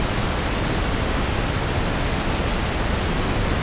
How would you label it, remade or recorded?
recorded